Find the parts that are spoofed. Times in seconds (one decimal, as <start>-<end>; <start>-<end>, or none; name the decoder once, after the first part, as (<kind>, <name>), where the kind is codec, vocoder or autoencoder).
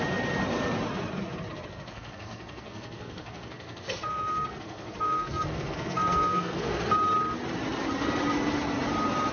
1.7-6.8 (codec, SNAC)